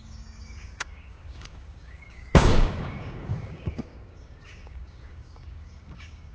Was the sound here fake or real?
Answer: fake